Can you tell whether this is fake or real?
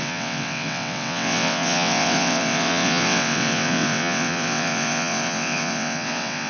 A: fake